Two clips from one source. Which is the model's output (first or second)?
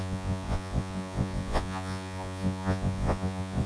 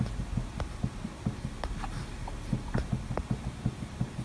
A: first